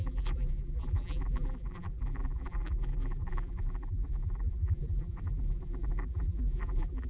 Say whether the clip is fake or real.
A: fake